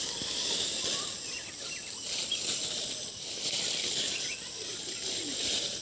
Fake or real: real